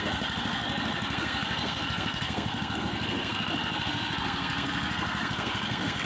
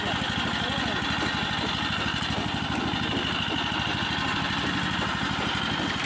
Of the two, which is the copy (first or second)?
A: first